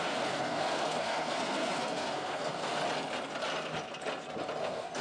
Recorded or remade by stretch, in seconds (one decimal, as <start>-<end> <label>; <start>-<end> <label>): 0.0-2.8 remade; 2.8-4.6 recorded; 4.6-5.0 remade